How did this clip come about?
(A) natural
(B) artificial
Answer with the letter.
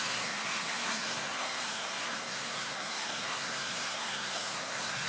B